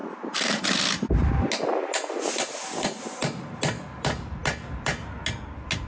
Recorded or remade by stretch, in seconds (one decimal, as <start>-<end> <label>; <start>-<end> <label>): 0.0-5.9 recorded